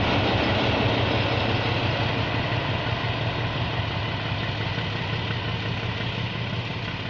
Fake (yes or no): no